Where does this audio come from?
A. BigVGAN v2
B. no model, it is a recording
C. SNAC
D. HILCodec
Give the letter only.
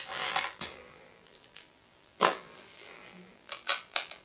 A